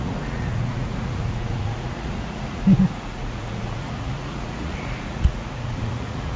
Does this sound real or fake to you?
fake